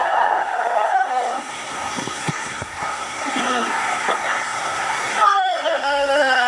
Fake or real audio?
fake